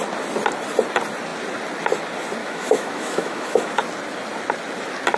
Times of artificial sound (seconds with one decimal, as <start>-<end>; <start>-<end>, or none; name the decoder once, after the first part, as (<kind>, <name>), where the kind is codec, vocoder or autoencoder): 2.4-3.7 (autoencoder, DAC-VAE)